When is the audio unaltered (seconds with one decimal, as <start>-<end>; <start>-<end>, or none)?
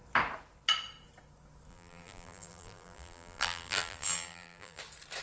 0.0-1.7; 4.8-5.2